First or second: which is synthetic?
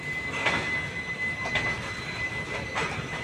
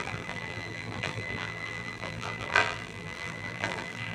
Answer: second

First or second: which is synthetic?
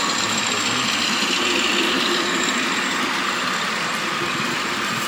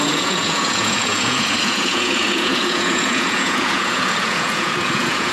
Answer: second